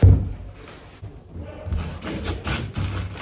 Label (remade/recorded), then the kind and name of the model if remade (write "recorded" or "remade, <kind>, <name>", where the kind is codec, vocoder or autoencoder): recorded